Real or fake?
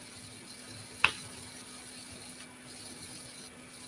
real